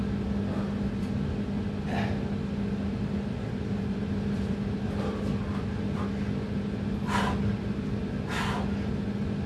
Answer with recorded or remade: recorded